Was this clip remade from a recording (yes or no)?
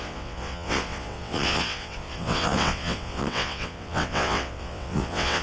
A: yes